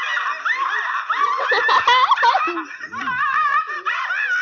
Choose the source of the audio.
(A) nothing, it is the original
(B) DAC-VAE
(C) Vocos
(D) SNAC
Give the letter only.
A